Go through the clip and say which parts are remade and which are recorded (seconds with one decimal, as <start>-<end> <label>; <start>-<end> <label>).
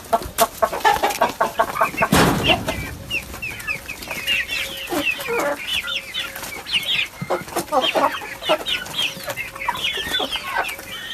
0.0-11.1 recorded